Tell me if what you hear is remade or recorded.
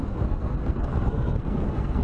remade